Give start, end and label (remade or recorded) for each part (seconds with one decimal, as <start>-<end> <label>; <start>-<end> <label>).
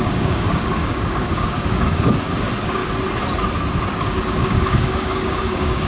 0.0-2.8 remade; 2.8-4.0 recorded; 4.0-5.9 remade